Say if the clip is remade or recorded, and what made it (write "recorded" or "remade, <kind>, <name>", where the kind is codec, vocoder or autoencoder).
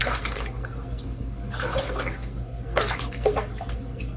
remade, codec, SNAC